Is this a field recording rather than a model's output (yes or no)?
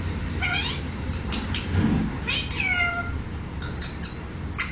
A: yes